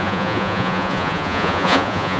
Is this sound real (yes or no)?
no